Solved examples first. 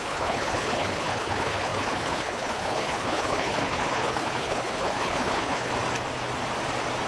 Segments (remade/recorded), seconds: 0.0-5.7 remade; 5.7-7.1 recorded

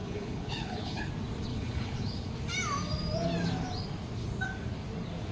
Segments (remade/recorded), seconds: 0.0-1.1 remade; 1.1-1.5 recorded; 1.5-2.3 remade; 2.3-5.3 recorded

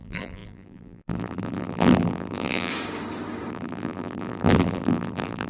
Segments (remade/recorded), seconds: 0.0-2.7 remade; 2.7-3.5 recorded; 3.5-5.5 remade

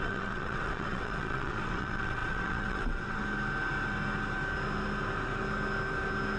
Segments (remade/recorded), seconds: 0.0-3.2 remade; 3.2-6.4 recorded